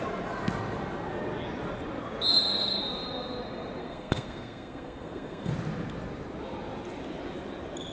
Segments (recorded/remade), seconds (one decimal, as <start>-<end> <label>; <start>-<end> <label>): 0.0-2.3 recorded; 2.3-2.8 remade; 2.8-3.8 recorded; 3.8-5.5 remade; 5.5-7.9 recorded